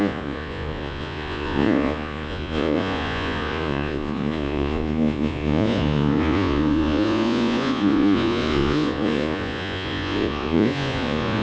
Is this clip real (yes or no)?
no